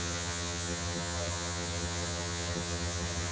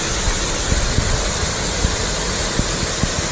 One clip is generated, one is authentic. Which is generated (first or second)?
first